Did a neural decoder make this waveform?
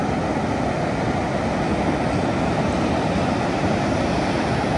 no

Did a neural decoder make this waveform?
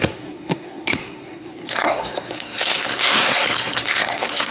yes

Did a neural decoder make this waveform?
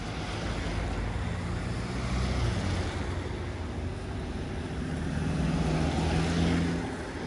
no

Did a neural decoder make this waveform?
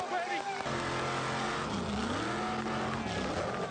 no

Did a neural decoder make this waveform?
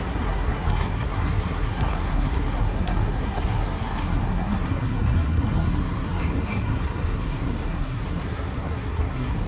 yes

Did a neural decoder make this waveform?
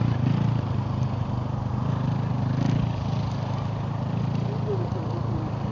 no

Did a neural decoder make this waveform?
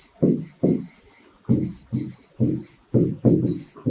no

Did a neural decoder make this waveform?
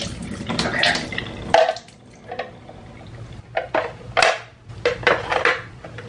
no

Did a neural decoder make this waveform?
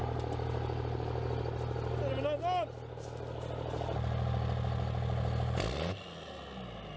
no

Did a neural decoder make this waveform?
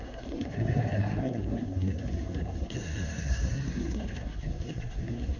yes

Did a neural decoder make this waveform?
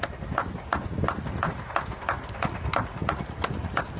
no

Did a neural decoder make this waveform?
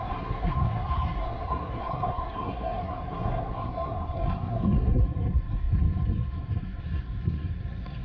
yes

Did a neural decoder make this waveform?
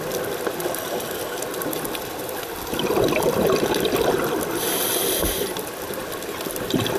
no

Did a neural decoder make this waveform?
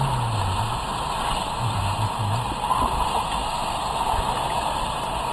no